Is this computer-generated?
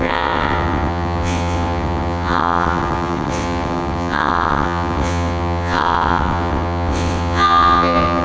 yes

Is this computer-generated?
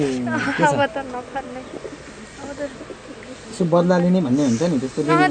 no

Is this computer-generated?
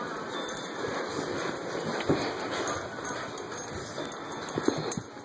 no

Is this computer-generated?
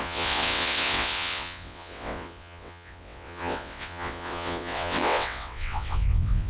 yes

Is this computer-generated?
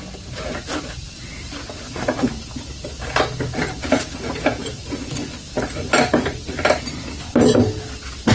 no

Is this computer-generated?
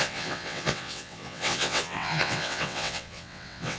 yes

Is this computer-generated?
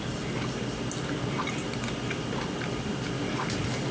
no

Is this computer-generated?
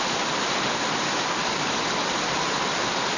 no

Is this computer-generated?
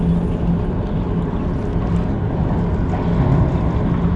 no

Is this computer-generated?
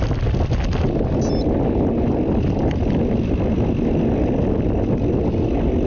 no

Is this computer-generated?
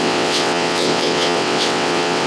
yes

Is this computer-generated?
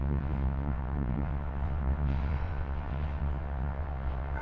yes